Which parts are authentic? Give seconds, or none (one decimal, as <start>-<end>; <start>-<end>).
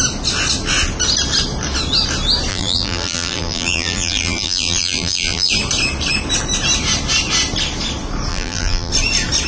0.0-2.5; 5.5-8.3; 8.9-9.5